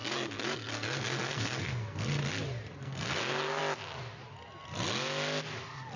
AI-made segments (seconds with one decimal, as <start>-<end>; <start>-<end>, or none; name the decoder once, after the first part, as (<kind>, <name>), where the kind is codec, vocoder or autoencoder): 0.0-2.2 (codec, SNAC); 2.8-3.6